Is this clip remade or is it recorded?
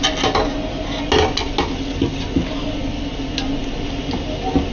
recorded